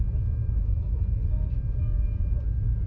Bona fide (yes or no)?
yes